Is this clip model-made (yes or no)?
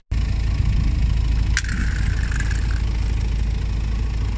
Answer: no